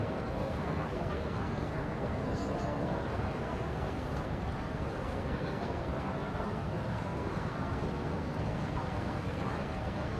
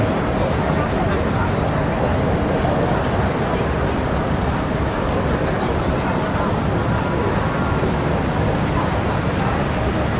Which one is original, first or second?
second